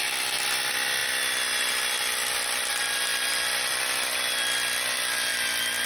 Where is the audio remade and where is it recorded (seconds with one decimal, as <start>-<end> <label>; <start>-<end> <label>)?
0.0-5.9 recorded